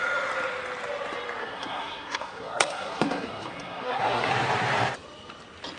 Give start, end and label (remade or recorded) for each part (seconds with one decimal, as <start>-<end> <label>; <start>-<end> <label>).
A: 0.0-1.4 recorded; 1.4-4.3 remade; 4.3-5.8 recorded